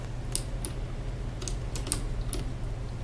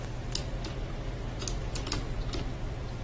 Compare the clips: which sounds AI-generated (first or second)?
second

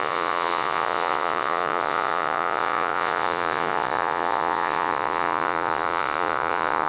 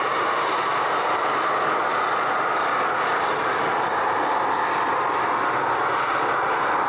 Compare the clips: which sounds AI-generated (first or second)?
first